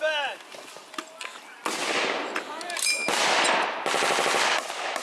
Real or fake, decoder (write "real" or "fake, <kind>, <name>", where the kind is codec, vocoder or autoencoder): real